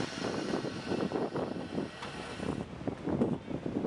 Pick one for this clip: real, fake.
real